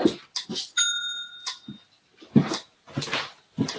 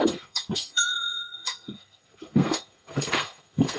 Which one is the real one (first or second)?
first